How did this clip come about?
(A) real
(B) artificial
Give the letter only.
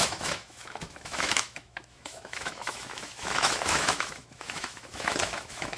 B